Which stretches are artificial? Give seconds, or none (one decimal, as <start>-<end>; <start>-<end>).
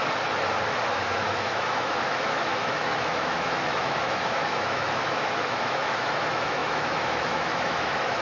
0.9-8.2